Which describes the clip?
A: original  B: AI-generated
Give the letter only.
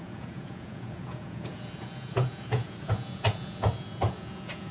B